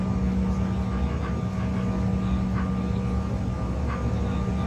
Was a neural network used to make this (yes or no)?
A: no